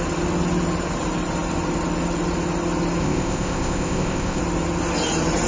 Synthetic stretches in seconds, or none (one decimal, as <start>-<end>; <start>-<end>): 3.0-4.4